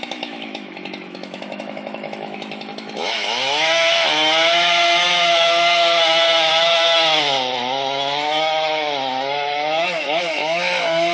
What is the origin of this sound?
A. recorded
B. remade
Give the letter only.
B